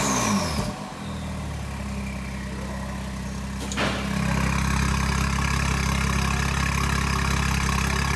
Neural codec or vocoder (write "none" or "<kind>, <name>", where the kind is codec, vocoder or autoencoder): none